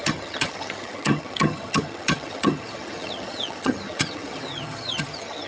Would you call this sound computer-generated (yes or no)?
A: yes